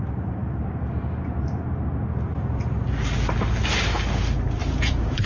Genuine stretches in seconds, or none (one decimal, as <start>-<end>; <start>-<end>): 0.0-4.6

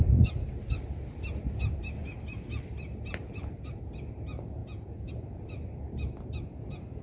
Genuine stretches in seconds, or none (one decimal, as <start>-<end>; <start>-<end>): 0.0-4.6; 5.1-7.0